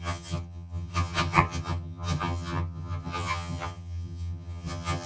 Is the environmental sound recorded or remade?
remade